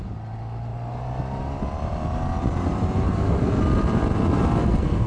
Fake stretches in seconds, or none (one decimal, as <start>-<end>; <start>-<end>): 3.1-3.6; 4.6-5.1